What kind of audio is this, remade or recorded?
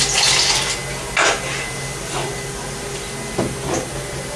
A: recorded